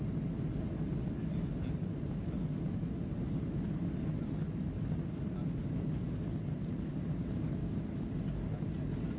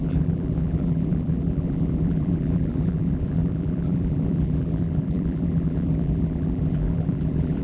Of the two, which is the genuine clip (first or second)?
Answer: first